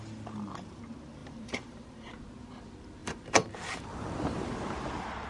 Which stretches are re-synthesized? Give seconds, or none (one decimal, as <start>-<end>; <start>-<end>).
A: 1.2-2.1; 3.0-3.8